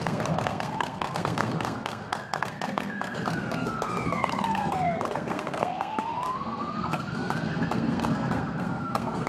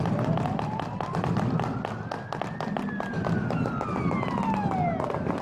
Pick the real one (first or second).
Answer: second